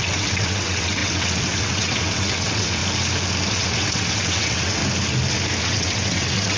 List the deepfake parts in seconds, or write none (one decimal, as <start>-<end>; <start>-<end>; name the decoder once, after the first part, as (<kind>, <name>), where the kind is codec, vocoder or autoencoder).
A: 0.0-2.8 (vocoder, WaveNeXt); 3.5-4.8; 5.6-6.6